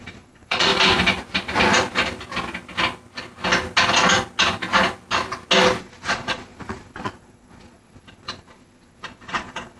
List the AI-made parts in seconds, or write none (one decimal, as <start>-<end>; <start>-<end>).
0.0-0.7; 5.8-9.8